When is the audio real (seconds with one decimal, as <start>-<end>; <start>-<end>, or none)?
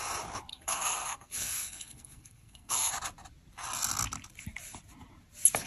0.0-0.5; 2.9-5.7